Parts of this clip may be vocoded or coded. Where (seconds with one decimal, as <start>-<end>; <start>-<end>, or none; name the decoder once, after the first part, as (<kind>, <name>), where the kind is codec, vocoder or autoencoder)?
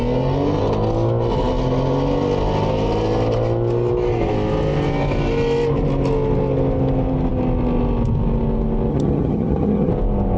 8.9-9.9 (vocoder, HiFi-GAN)